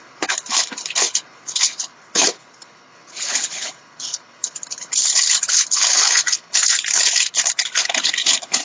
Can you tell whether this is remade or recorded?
remade